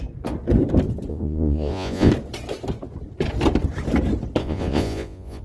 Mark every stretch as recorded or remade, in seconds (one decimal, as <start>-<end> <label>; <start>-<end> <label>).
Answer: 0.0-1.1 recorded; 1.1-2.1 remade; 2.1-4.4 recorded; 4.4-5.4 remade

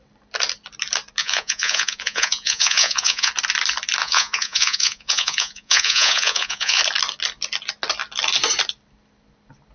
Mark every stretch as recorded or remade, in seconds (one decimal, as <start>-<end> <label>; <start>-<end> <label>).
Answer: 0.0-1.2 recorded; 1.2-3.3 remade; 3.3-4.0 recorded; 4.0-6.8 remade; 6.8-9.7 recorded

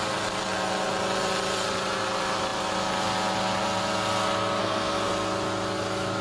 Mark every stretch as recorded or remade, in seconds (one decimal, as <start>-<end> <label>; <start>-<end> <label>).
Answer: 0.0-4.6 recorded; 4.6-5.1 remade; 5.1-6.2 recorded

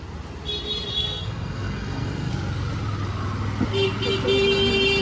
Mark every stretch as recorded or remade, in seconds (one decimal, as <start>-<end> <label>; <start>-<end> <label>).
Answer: 0.0-0.9 recorded; 0.9-2.3 remade; 2.3-5.0 recorded

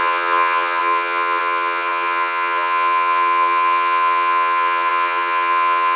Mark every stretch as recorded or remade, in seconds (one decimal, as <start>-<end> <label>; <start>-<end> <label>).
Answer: 0.0-6.0 remade

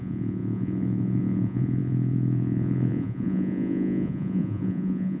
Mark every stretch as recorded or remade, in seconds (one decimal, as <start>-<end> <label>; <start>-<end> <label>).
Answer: 0.0-5.2 remade

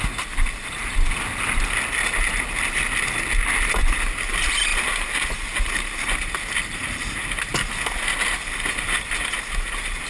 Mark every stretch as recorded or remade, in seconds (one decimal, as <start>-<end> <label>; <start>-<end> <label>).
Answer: 0.0-10.1 recorded

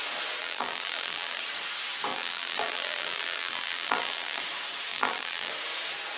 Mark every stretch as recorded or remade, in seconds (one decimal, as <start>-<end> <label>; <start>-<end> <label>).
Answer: 0.0-0.4 recorded; 0.4-1.4 remade; 1.4-2.1 recorded; 2.1-4.4 remade; 4.4-4.9 recorded; 4.9-5.5 remade; 5.5-6.2 recorded